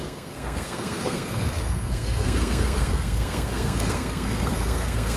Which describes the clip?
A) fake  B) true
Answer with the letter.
A